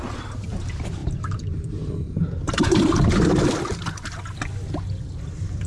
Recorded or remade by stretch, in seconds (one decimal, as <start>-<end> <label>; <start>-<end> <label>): 0.0-1.0 recorded; 1.0-3.5 remade; 3.5-5.7 recorded